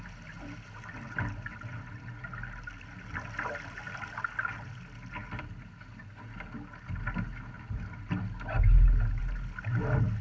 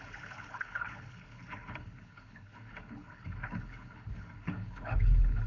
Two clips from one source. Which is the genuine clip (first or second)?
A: first